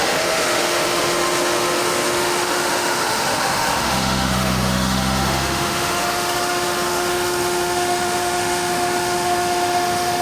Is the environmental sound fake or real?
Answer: fake